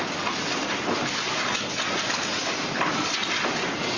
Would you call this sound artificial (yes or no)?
no